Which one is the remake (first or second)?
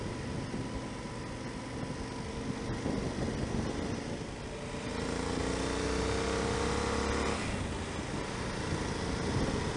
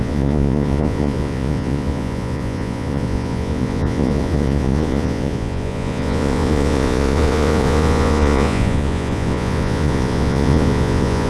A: second